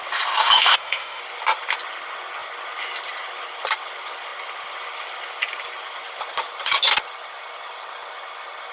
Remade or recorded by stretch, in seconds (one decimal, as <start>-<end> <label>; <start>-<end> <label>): 0.0-0.4 recorded; 0.4-1.2 remade; 1.2-8.7 recorded